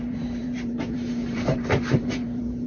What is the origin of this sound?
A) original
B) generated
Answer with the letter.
B